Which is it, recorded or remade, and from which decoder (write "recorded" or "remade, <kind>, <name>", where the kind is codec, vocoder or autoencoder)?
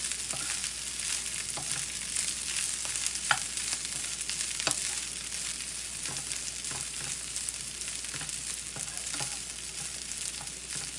recorded